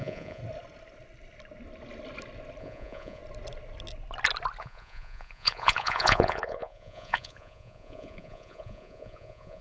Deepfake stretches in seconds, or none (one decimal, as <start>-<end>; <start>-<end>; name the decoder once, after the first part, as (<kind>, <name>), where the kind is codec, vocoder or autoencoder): 0.0-0.4 (vocoder, Vocos); 2.6-3.2; 4.6-9.6